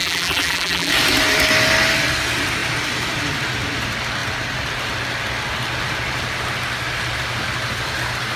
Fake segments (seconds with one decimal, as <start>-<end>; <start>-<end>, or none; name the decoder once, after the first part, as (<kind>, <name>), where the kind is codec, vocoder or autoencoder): 0.0-0.9 (vocoder, BigVGAN v2)